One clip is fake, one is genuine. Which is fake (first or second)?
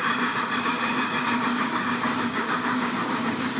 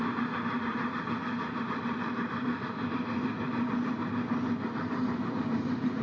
first